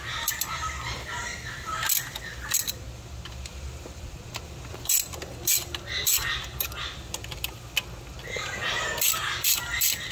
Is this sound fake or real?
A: real